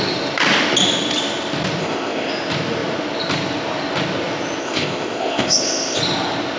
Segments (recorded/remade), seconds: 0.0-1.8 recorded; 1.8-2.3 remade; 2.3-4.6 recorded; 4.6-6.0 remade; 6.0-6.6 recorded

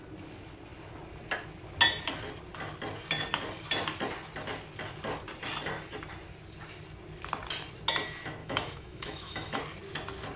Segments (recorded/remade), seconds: 0.0-8.4 recorded; 8.4-9.6 remade; 9.6-10.4 recorded